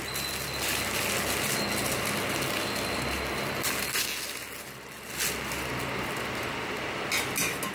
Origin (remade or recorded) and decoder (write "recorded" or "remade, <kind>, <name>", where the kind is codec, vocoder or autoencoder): recorded